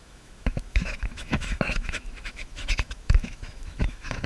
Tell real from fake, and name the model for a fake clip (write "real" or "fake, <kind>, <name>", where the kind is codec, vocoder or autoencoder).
fake, autoencoder, DAC-VAE